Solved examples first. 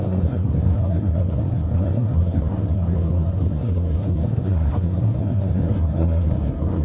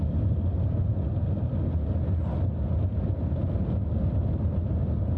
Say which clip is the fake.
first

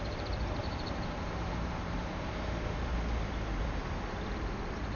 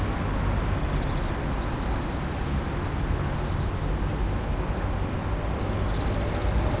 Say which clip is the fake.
first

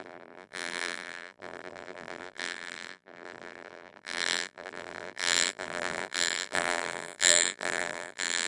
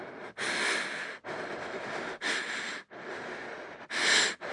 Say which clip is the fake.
first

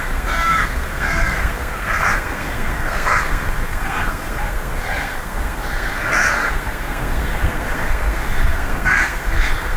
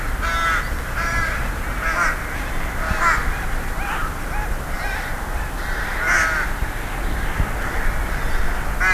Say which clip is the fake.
first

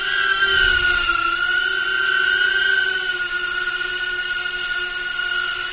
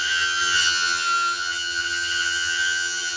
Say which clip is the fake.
second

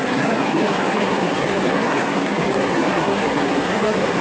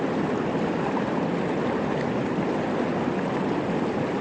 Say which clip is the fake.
first